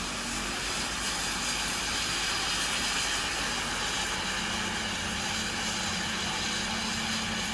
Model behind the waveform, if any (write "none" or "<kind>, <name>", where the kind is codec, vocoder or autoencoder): none